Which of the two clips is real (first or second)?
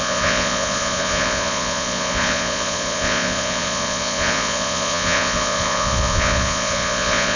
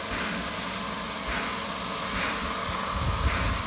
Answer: second